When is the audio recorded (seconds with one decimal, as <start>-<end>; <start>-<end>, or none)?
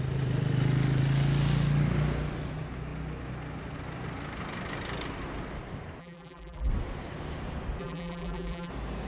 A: 0.0-6.0; 6.7-7.8; 8.7-9.1